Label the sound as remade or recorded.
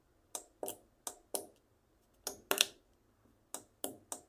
recorded